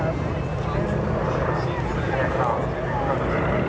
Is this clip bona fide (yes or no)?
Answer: yes